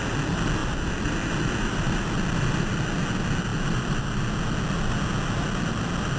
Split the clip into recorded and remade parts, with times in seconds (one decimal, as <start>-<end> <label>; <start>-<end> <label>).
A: 0.0-0.6 recorded; 0.6-2.0 remade; 2.0-6.2 recorded

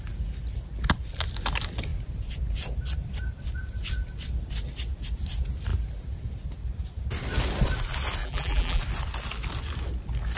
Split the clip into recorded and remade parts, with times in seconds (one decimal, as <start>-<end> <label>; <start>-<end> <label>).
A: 0.0-8.2 recorded; 8.2-8.8 remade; 8.8-10.4 recorded

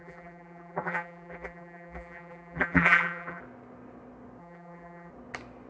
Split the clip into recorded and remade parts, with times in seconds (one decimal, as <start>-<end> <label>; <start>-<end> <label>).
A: 0.0-3.4 remade; 3.4-4.4 recorded; 4.4-5.1 remade; 5.1-5.7 recorded

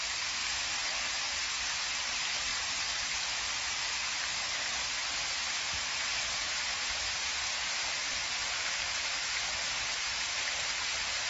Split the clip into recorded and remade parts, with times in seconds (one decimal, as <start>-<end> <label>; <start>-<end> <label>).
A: 0.0-0.4 remade; 0.4-1.2 recorded; 1.2-10.3 remade; 10.3-10.9 recorded; 10.9-11.3 remade

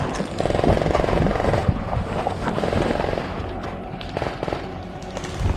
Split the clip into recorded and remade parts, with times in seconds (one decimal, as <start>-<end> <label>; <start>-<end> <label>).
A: 0.0-1.6 recorded; 1.6-5.0 remade; 5.0-5.6 recorded

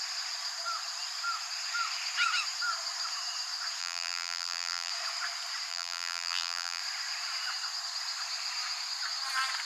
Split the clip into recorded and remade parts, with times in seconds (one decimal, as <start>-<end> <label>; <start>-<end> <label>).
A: 0.0-3.8 recorded; 3.8-4.9 remade; 4.9-5.7 recorded; 5.7-6.8 remade; 6.8-9.6 recorded

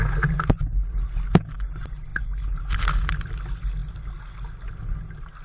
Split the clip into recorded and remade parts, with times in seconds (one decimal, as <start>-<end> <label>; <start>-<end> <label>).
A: 0.0-5.4 recorded

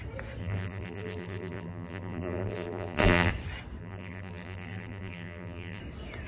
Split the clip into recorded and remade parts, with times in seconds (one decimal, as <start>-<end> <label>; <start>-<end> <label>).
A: 0.0-0.4 recorded; 0.4-3.3 remade; 3.3-3.8 recorded; 3.8-5.8 remade; 5.8-6.3 recorded